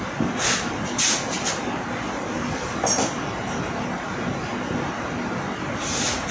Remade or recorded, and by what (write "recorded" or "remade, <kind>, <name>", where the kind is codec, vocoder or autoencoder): recorded